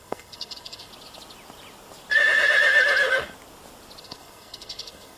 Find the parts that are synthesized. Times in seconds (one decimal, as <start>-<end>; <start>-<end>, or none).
0.0-0.9; 4.0-5.2

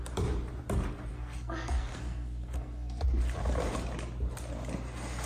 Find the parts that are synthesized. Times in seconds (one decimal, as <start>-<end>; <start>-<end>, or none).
1.1-3.0

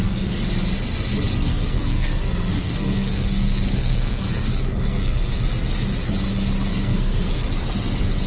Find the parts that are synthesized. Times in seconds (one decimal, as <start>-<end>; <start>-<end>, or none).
1.5-5.3; 6.7-7.3

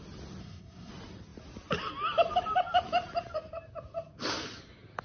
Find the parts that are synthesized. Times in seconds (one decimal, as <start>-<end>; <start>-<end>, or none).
0.4-0.9